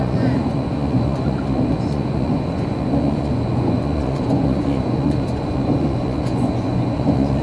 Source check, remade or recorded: remade